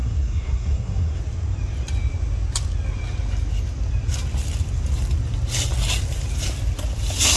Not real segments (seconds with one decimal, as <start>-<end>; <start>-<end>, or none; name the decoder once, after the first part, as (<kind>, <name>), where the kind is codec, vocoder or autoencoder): 0.0-1.2 (codec, SNAC)